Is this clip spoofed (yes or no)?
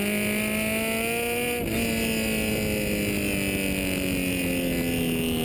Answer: no